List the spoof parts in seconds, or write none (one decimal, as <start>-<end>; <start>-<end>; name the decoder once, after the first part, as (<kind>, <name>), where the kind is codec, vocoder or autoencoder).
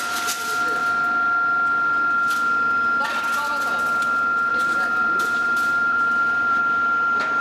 4.5-6.6 (vocoder, BigVGAN v2)